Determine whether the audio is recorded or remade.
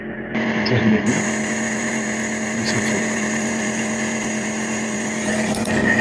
remade